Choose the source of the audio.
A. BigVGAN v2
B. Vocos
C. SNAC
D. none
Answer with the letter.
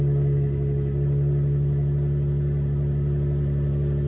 D